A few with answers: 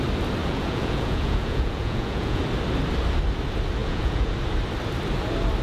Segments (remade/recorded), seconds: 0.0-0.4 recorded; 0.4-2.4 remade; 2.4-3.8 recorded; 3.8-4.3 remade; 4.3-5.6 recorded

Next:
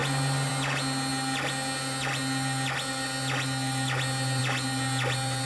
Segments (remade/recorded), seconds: 0.0-5.5 recorded